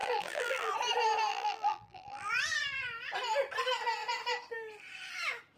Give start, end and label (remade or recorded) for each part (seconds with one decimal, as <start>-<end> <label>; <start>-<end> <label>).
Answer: 0.0-0.7 remade; 0.7-1.3 recorded; 1.3-2.3 remade; 2.3-5.6 recorded